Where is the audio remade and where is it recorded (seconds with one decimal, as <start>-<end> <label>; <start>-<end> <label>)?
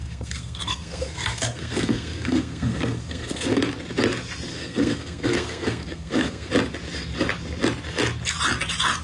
0.0-3.6 remade; 3.6-4.5 recorded; 4.5-6.5 remade; 6.5-9.0 recorded